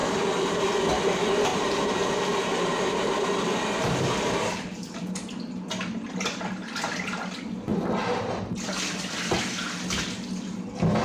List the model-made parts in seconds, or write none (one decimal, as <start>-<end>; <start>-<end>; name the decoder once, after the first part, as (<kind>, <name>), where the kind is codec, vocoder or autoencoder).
0.0-0.6 (vocoder, BigVGAN v2); 1.5-5.1; 7.7-8.7